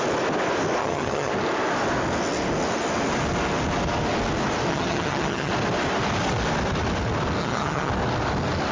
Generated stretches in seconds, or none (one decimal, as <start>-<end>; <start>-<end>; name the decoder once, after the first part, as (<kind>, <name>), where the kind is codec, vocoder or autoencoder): 0.8-1.3 (vocoder, HiFi-GAN); 4.7-5.5; 7.4-7.9